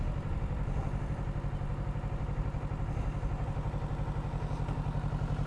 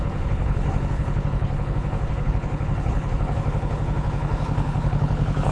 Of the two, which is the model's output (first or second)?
second